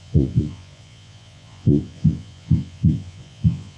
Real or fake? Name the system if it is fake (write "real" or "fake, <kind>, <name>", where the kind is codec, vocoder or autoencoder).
fake, vocoder, Vocos